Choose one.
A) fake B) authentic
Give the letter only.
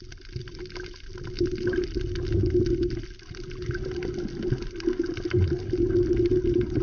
B